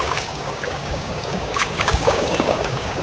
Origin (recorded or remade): remade